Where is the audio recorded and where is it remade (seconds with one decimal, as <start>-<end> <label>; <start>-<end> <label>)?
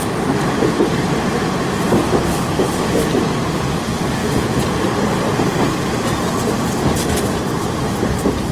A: 0.0-4.2 recorded; 4.2-4.7 remade; 4.7-8.5 recorded